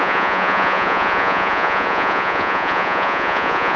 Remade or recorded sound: remade